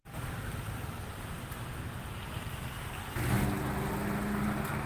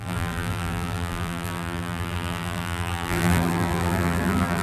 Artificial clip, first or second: second